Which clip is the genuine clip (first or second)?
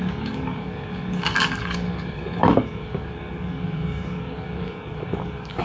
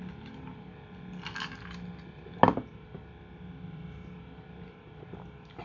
second